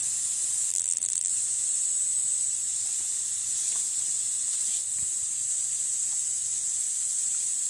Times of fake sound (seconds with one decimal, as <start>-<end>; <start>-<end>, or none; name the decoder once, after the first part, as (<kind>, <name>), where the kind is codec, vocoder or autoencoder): 0.7-1.3 (vocoder, BigVGAN v2)